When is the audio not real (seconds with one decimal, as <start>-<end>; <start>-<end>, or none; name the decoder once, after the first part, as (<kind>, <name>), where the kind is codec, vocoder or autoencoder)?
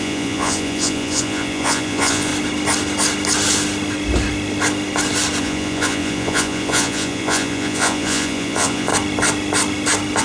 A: 0.0-2.3 (vocoder, Vocos); 5.4-8.9